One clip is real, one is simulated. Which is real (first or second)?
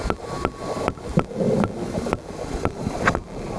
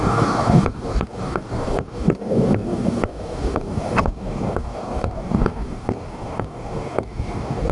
first